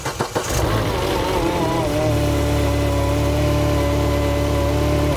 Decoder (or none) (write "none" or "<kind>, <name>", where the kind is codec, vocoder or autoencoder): none